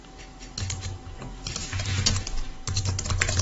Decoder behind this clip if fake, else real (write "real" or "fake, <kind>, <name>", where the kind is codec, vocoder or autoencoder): real